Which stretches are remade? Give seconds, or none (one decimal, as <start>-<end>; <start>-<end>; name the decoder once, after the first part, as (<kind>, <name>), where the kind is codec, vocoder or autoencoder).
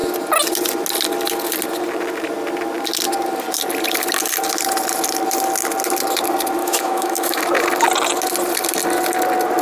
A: 6.6-7.4 (autoencoder, DAC-VAE)